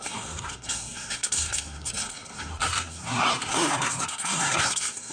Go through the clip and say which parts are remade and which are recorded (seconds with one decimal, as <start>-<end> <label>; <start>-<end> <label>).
0.0-5.1 remade